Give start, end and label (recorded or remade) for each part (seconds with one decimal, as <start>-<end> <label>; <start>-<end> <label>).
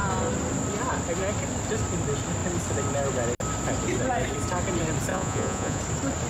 0.0-5.1 recorded; 5.1-5.8 remade; 5.8-6.3 recorded